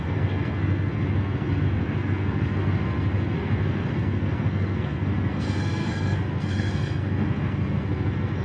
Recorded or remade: remade